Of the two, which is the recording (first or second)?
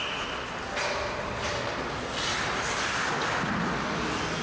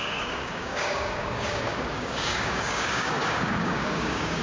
first